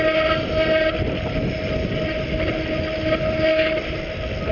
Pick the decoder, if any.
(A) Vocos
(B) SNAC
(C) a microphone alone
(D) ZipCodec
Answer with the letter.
C